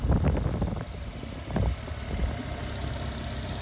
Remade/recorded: recorded